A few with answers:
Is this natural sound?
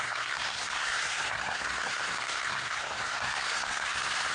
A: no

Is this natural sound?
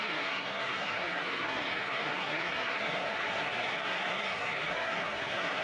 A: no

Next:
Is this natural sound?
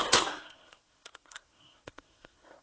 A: no